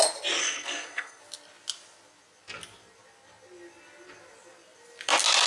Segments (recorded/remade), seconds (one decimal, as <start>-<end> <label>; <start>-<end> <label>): 0.0-0.4 recorded; 0.4-1.2 remade; 1.2-5.5 recorded